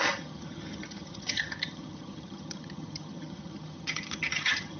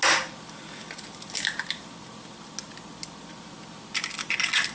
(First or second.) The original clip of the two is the second